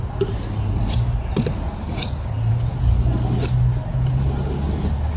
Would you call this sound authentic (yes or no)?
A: yes